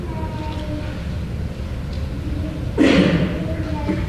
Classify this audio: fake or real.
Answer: real